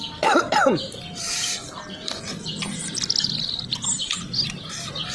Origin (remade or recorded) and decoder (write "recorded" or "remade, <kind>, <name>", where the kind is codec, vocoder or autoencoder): recorded